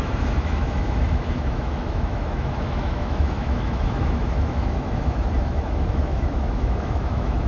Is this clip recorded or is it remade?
remade